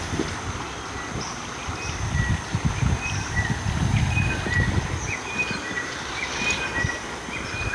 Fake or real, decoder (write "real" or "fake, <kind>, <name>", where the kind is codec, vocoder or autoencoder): real